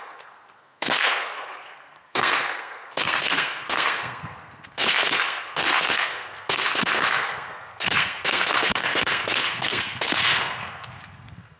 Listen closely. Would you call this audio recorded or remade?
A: remade